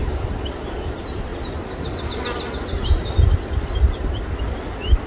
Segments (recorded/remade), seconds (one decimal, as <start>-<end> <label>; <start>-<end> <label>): 0.0-5.1 recorded